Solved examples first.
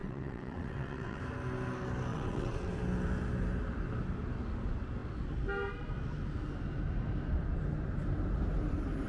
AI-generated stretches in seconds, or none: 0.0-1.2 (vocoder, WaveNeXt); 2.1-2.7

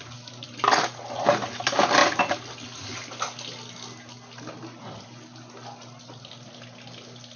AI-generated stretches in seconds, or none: none